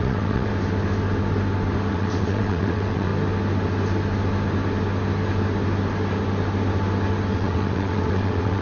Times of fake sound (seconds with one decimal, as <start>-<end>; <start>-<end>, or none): 0.0-0.5; 1.9-3.1; 7.3-8.6